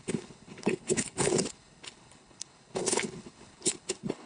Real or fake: fake